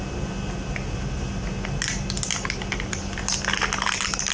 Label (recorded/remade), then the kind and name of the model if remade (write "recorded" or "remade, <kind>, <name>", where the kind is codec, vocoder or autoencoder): recorded